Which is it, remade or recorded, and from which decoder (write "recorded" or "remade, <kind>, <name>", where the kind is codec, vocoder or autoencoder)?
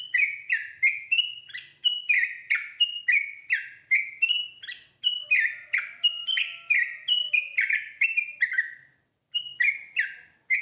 recorded